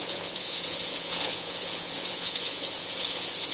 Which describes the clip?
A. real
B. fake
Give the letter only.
B